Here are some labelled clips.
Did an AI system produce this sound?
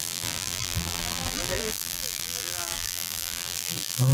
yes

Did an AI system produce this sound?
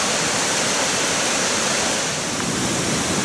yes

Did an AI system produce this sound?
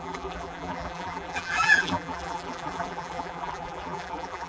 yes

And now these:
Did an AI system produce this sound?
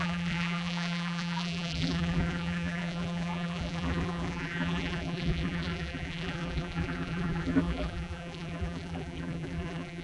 yes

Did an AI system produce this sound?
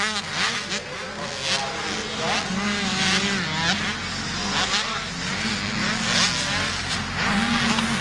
no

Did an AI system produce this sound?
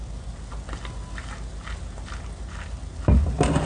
no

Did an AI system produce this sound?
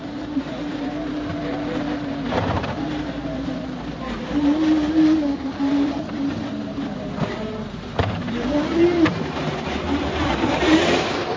yes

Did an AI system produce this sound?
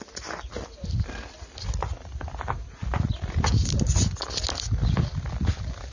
no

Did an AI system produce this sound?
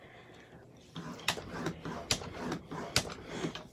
no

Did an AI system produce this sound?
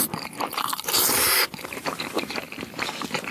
yes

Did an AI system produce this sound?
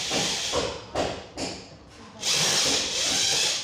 yes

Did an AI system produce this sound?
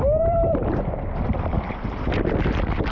yes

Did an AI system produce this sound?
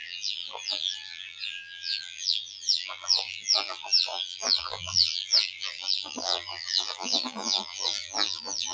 yes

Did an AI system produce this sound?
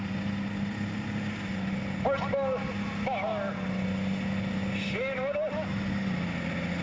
no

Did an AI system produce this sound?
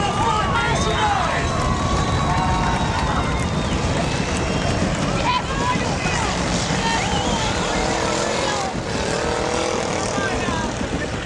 yes